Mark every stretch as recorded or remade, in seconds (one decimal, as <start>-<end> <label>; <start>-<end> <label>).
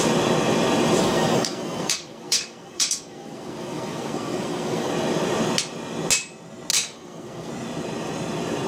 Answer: 0.0-1.0 recorded; 1.0-4.9 remade; 4.9-6.7 recorded; 6.7-7.5 remade; 7.5-8.7 recorded